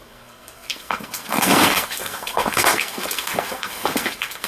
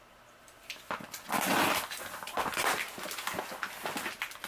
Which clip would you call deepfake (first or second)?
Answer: first